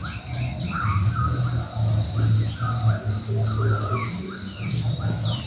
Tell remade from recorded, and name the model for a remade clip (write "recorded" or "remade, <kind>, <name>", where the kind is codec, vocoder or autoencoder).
recorded